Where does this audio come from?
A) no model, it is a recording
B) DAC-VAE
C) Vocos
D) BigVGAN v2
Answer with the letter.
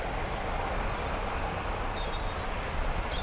A